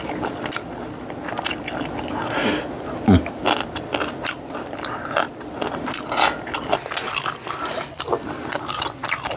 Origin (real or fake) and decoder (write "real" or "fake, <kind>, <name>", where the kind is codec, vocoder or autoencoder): real